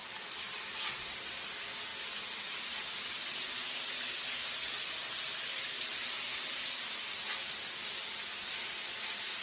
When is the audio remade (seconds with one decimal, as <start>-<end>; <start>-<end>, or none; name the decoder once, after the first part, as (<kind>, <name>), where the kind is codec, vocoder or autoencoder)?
none